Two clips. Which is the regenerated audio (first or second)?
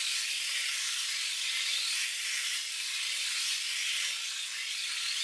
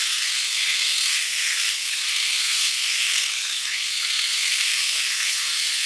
second